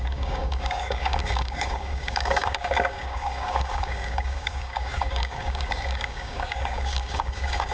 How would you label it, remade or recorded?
remade